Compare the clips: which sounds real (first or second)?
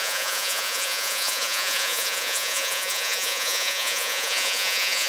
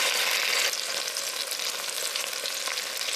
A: second